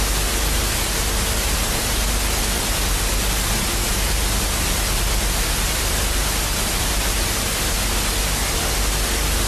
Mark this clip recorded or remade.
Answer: recorded